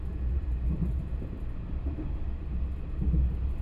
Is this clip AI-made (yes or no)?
no